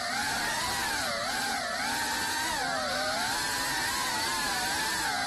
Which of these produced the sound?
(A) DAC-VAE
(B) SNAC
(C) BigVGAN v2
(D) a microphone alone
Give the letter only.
D